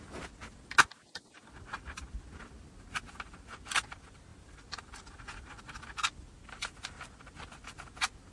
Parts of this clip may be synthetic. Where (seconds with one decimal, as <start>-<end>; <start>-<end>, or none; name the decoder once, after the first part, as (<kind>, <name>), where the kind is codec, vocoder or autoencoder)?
none